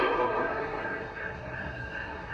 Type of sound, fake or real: fake